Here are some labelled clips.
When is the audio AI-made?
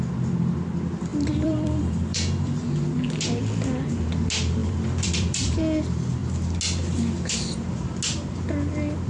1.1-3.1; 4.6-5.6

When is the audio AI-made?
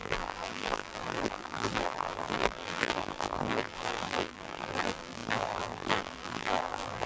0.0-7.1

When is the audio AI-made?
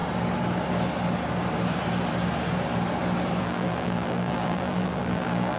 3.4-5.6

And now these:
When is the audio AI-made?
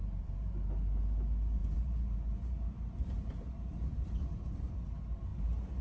0.0-0.7; 1.6-4.7; 5.3-5.8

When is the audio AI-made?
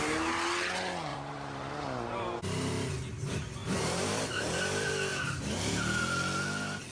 1.1-1.7; 2.1-2.7; 3.6-4.3; 5.1-6.0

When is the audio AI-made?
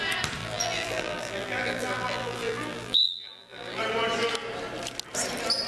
0.4-3.8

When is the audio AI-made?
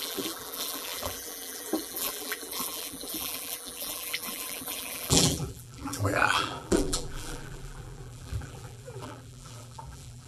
0.0-10.3